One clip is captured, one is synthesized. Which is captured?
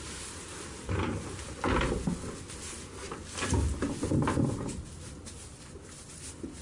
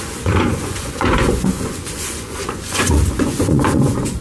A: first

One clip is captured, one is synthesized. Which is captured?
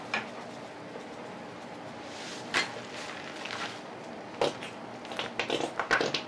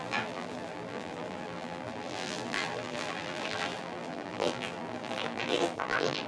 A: first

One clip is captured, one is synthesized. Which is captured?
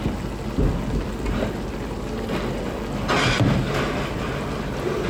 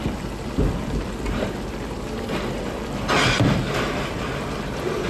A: first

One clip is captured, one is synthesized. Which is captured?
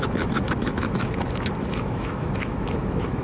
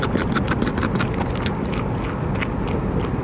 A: second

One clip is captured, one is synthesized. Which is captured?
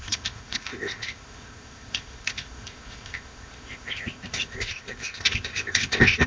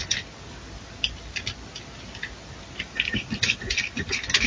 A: second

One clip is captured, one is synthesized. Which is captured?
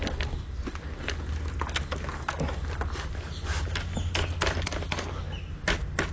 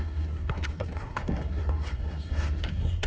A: first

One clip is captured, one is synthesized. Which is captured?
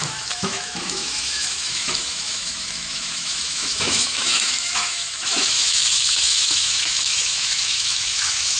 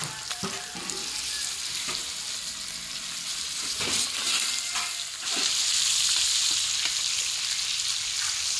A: second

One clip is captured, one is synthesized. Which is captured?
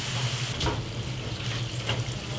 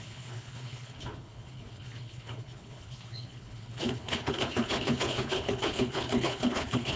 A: first